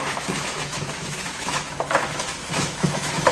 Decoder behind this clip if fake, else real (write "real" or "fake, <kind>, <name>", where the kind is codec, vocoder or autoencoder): fake, autoencoder, DAC-VAE